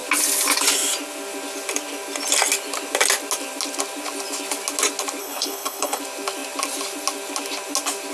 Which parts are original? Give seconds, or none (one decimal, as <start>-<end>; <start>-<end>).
0.0-5.2; 6.0-8.1